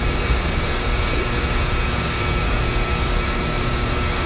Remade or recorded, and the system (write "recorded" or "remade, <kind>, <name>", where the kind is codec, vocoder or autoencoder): remade, codec, DAC